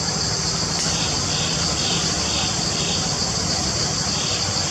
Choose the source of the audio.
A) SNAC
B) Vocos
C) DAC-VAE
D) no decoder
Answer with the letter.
D